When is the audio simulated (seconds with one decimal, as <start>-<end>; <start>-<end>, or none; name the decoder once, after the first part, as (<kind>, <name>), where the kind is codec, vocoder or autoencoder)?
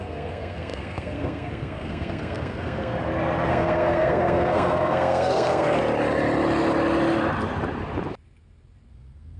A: 0.0-2.9 (codec, SNAC); 3.5-5.8; 8.9-9.4